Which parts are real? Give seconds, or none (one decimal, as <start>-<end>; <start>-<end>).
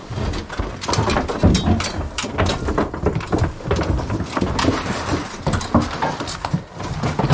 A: 0.0-7.3